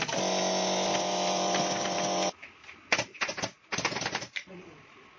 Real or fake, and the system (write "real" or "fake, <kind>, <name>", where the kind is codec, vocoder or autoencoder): real